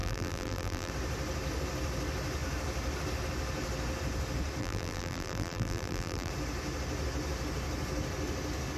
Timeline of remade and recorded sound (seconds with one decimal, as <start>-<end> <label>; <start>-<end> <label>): 0.0-0.9 remade; 0.9-4.6 recorded; 4.6-6.3 remade; 6.3-8.8 recorded